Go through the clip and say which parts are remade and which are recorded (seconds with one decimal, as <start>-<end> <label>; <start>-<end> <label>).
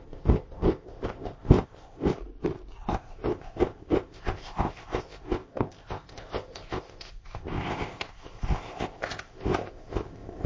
0.0-2.2 remade; 2.2-2.9 recorded; 2.9-10.5 remade